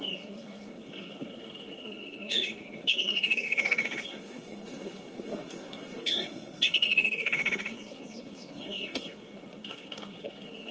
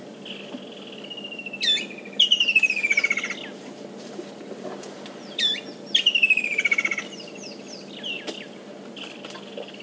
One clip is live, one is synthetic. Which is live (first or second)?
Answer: second